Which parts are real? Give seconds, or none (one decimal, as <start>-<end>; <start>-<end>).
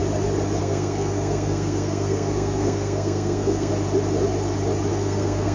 0.0-0.6; 3.7-4.9